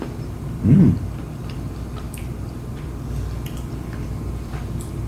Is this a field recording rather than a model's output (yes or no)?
no